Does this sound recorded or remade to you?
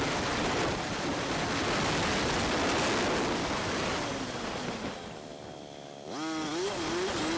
recorded